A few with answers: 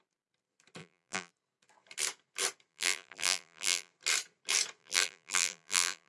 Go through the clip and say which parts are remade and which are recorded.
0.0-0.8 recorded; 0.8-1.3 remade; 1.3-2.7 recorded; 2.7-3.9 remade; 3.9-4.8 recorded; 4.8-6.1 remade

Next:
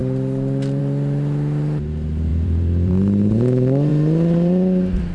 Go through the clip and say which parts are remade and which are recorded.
0.0-2.3 recorded; 2.3-2.9 remade; 2.9-3.9 recorded; 3.9-5.1 remade

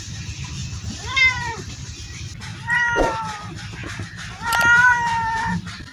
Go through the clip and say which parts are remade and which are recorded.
0.0-0.6 remade; 0.6-1.2 recorded; 1.2-3.8 remade; 3.8-4.4 recorded; 4.4-5.9 remade